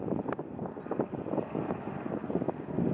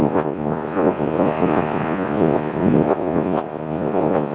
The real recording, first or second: first